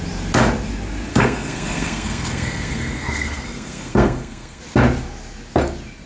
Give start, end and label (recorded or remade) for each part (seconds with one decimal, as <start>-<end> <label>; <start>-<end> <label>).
0.0-1.1 recorded; 1.1-4.6 remade; 4.6-6.1 recorded